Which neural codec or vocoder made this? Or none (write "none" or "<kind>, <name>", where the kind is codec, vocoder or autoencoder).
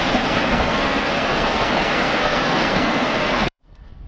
codec, SNAC